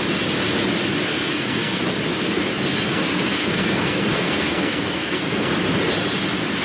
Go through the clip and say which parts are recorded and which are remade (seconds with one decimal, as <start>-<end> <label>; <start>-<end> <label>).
0.0-1.1 recorded; 1.1-1.8 remade; 1.8-2.9 recorded; 2.9-5.5 remade; 5.5-6.6 recorded

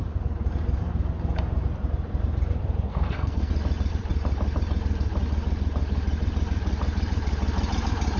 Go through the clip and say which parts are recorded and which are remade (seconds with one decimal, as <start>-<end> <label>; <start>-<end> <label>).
0.0-2.9 recorded; 2.9-3.5 remade; 3.5-8.2 recorded

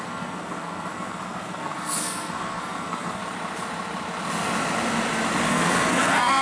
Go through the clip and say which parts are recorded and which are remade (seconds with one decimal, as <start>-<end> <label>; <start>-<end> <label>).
0.0-3.2 remade; 3.2-5.5 recorded; 5.5-6.4 remade

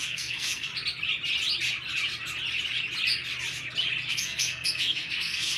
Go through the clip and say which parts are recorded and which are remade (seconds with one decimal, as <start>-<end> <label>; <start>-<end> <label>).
0.0-0.7 remade; 0.7-4.1 recorded; 4.1-5.6 remade

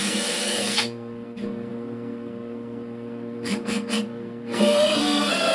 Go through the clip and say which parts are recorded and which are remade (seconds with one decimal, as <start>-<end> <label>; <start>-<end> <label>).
0.0-5.5 remade

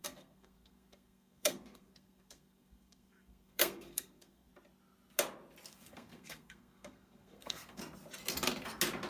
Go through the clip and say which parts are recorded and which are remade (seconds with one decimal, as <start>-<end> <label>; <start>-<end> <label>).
0.0-4.5 remade; 4.5-5.7 recorded; 5.7-7.8 remade; 7.8-9.1 recorded

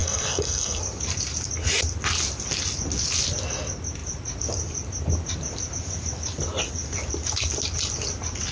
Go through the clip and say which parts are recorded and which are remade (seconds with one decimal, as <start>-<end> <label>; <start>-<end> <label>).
0.0-0.8 remade; 0.8-8.5 recorded

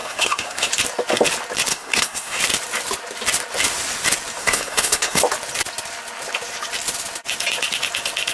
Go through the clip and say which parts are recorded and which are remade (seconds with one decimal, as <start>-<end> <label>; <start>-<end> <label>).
0.0-0.7 remade; 0.7-1.7 recorded; 1.7-2.4 remade; 2.4-4.4 recorded; 4.4-5.2 remade; 5.2-8.3 recorded